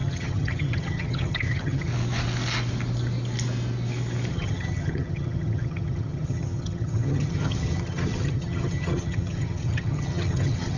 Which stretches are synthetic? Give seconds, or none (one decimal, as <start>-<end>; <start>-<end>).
0.0-1.9; 4.3-10.8